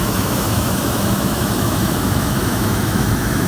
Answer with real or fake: fake